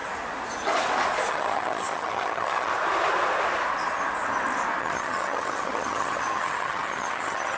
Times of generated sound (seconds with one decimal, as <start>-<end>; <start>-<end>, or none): 1.3-2.7; 4.8-7.6